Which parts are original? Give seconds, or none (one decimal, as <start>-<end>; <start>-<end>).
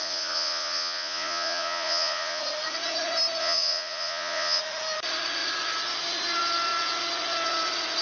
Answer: 2.4-3.4; 4.6-8.0